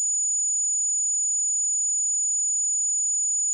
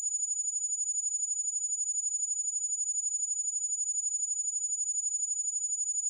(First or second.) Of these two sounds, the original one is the first